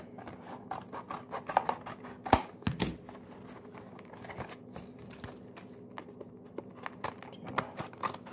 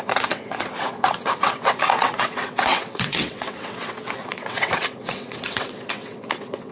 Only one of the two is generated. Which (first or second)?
second